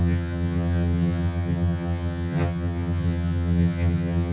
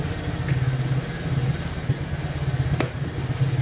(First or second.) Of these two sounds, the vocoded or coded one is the first